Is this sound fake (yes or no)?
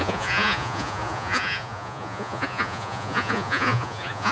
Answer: yes